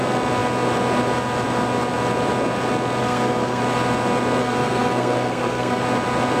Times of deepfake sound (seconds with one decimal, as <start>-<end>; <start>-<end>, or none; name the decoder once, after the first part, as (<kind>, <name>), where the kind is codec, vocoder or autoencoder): 3.0-3.6 (codec, SNAC); 4.4-5.8

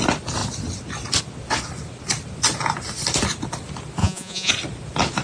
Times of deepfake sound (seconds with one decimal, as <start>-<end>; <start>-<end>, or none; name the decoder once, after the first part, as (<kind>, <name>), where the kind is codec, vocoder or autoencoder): 4.0-4.5 (vocoder, Vocos)

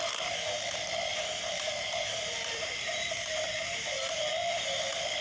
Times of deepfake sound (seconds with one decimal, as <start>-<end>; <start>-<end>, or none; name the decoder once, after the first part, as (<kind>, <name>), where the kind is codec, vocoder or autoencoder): 1.1-4.2 (vocoder, BigVGAN v2)